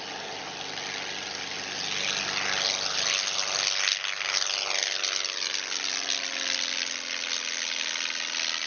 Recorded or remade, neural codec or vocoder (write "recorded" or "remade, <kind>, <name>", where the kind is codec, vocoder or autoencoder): recorded